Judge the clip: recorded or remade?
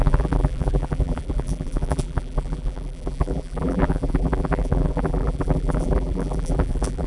remade